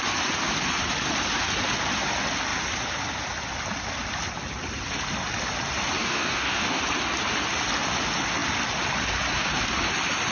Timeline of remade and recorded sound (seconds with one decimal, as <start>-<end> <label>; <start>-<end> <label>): 0.0-6.0 recorded; 6.0-6.8 remade; 6.8-10.3 recorded